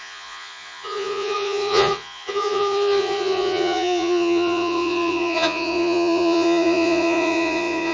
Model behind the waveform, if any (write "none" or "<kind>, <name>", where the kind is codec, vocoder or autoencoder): vocoder, Vocos